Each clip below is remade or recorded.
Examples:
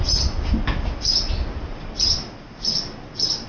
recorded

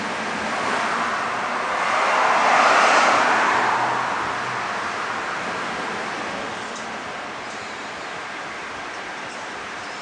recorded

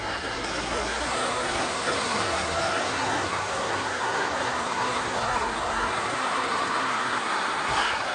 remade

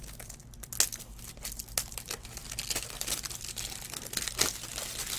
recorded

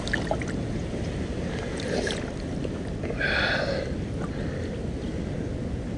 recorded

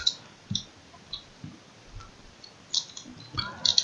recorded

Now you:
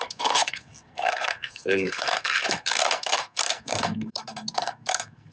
remade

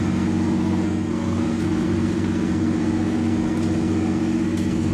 remade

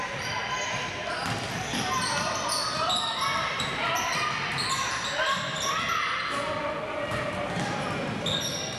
recorded